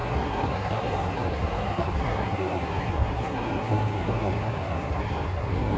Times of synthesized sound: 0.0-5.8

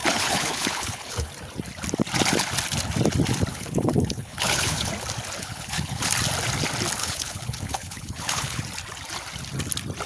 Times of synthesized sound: 0.0-1.3; 3.5-4.9; 5.4-6.1; 7.0-8.6

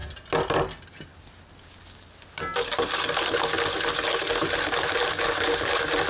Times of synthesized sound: none

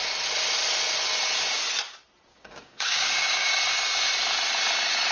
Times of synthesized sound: 2.3-3.6

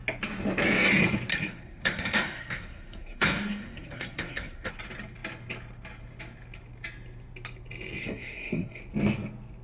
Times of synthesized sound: 1.3-4.7; 8.0-8.8

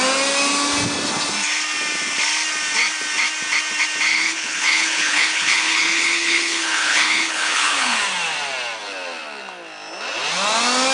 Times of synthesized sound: 4.1-8.0

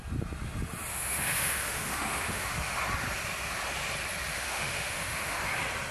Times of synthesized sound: 0.9-2.8; 4.3-5.4

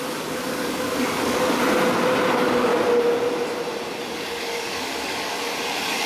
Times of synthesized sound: 0.0-1.6; 2.3-2.7; 4.0-6.1